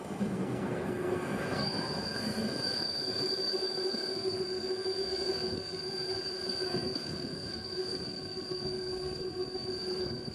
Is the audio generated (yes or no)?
yes